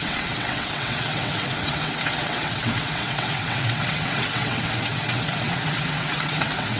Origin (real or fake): fake